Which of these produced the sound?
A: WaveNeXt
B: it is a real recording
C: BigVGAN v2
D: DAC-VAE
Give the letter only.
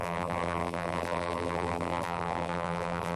C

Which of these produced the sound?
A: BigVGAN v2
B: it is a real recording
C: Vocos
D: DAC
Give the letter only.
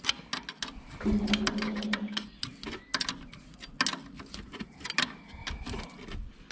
B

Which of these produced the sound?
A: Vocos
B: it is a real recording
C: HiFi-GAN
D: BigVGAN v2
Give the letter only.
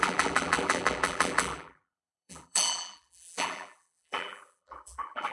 D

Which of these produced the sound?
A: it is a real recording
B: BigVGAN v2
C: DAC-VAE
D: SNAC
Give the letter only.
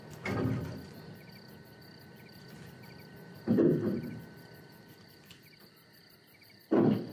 B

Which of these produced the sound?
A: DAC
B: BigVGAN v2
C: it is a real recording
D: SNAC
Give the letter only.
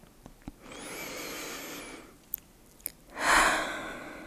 C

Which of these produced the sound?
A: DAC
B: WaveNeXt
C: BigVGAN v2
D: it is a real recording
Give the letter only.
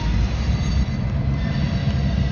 D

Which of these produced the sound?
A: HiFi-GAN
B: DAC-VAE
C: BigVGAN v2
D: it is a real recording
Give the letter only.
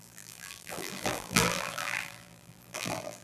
C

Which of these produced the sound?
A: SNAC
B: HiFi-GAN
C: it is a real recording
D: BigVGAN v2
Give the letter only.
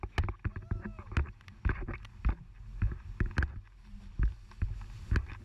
C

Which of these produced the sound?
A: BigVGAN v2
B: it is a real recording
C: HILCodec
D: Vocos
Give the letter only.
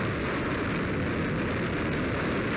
B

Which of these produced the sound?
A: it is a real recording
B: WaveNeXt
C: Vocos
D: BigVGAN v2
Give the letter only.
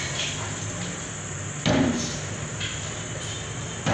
A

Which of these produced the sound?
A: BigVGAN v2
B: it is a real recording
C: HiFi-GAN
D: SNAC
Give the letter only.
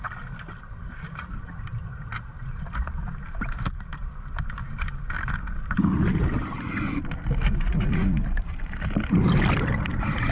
A